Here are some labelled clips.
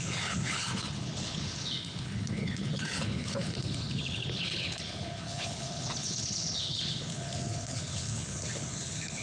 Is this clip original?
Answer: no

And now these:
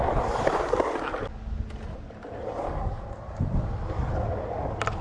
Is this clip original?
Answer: yes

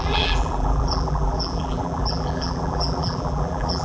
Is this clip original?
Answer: no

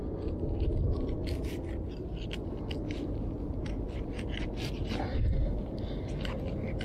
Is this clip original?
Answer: yes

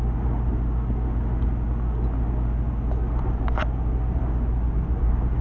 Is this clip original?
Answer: yes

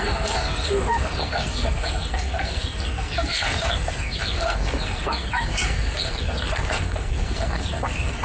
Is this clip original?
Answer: no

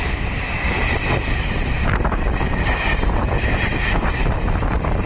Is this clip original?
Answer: yes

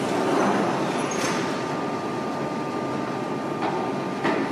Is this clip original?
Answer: yes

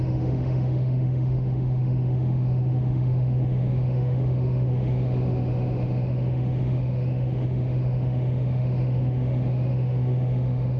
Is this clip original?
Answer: no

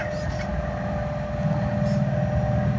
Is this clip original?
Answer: yes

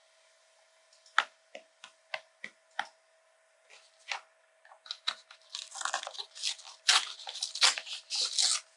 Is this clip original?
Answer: yes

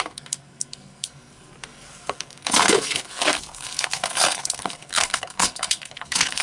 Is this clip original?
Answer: no